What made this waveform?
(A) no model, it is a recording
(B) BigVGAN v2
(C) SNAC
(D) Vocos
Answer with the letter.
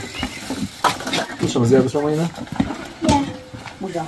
A